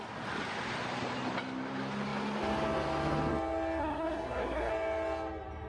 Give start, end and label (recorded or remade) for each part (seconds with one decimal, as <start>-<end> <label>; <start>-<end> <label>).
0.0-3.8 recorded; 3.8-4.7 remade; 4.7-5.7 recorded